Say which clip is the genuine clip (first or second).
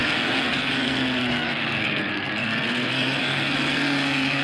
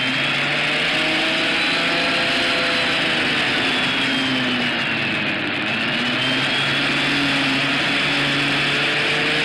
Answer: second